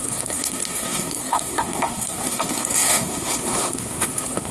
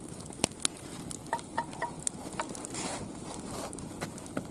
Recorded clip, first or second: second